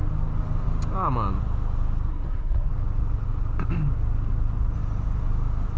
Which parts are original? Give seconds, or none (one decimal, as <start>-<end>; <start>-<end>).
0.0-2.1; 2.7-5.8